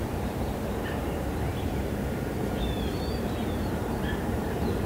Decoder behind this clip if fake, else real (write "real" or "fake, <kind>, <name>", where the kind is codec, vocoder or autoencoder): fake, vocoder, BigVGAN v2